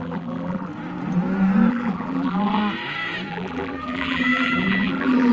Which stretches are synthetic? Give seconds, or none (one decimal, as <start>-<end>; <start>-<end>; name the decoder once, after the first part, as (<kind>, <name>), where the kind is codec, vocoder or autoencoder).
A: 0.0-0.7 (vocoder, BigVGAN v2); 1.7-2.6; 3.3-5.3